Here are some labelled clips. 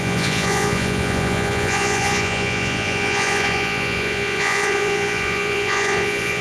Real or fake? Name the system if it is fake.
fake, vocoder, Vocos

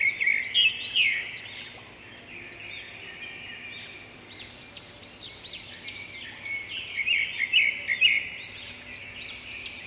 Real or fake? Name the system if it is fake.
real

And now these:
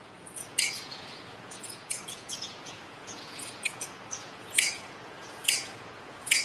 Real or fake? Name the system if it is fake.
fake, vocoder, Vocos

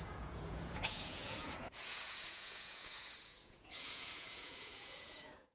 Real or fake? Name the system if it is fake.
fake, vocoder, Vocos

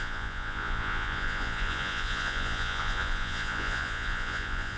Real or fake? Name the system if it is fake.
fake, vocoder, Vocos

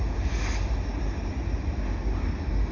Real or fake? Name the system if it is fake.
real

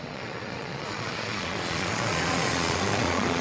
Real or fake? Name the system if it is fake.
fake, vocoder, Vocos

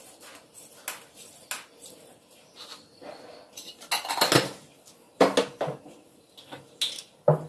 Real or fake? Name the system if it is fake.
real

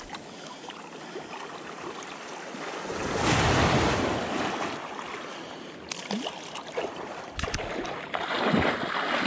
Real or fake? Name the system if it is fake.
real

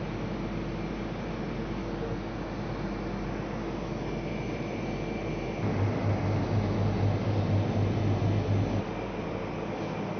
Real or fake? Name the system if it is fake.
real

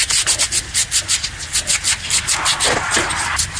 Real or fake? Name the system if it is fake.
real